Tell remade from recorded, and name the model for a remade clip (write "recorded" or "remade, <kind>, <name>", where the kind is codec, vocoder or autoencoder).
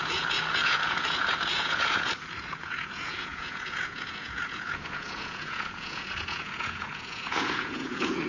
remade, vocoder, Vocos